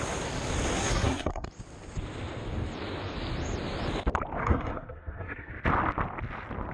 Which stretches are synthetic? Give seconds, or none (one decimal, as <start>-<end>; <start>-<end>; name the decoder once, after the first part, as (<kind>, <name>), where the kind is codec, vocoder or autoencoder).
0.8-1.5 (codec, SNAC); 4.4-5.5